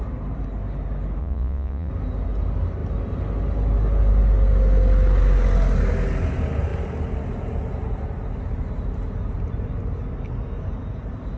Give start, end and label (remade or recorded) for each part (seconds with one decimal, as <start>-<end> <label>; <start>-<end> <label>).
0.0-1.2 recorded; 1.2-1.9 remade; 1.9-11.4 recorded